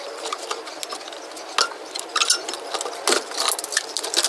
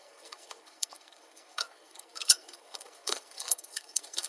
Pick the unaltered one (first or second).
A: first